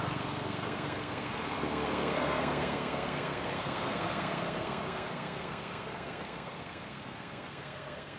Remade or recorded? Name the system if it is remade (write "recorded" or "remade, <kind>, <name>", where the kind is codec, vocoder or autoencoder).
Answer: remade, codec, SNAC